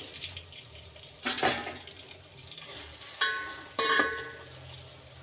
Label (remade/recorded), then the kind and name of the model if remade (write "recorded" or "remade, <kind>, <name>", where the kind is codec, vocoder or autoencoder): recorded